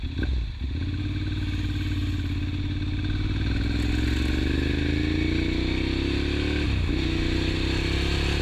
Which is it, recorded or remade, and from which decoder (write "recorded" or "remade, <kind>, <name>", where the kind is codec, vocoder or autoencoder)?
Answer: recorded